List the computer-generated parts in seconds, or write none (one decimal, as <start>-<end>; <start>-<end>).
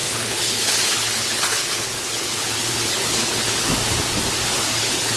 0.0-3.8; 4.6-5.2